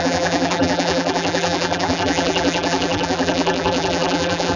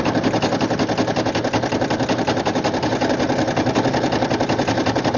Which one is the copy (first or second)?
first